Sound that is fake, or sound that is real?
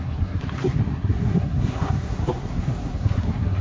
fake